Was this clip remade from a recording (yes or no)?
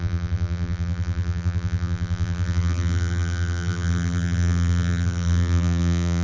yes